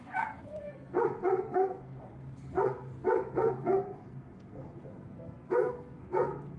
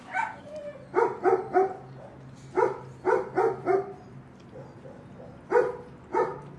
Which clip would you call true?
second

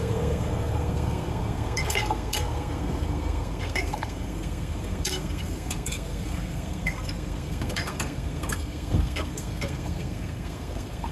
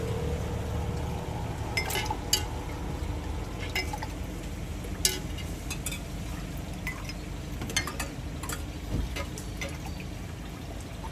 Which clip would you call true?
second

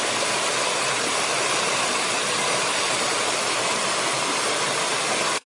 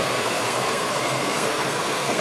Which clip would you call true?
first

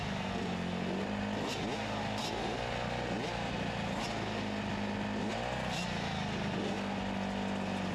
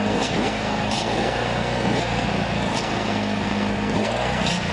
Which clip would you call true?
first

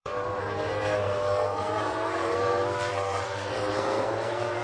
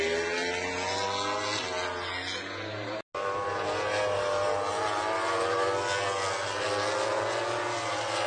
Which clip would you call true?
second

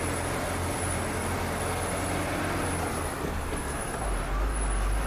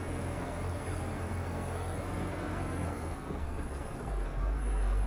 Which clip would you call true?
first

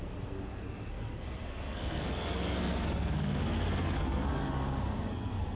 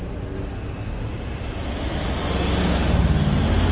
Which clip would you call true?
second